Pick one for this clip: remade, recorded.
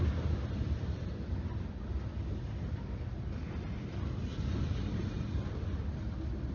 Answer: recorded